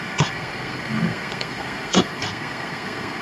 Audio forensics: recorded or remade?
remade